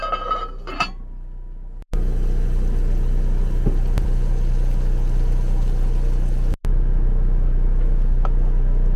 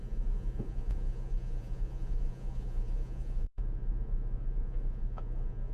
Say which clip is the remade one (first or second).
second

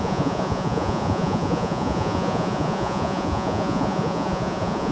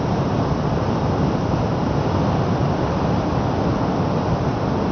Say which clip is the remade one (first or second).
first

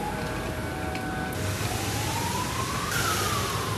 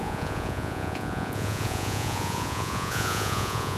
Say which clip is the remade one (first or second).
second